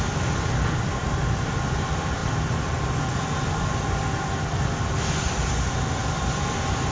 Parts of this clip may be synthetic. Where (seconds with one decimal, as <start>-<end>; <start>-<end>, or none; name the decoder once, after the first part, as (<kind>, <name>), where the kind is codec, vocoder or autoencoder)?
none